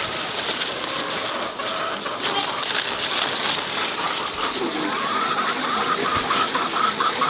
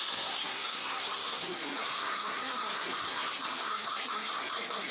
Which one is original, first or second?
first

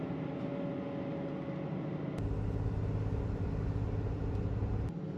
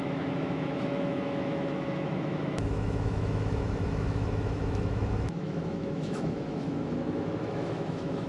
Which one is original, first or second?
first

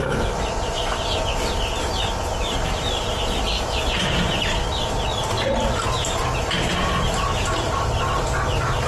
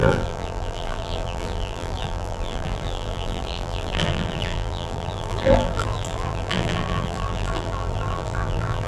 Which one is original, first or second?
first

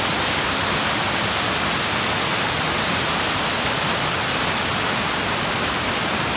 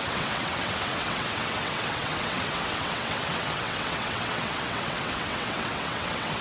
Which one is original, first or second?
first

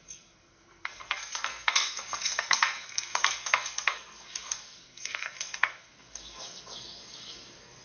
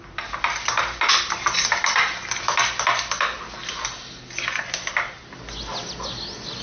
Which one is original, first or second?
second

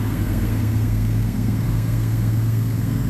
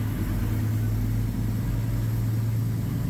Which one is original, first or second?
second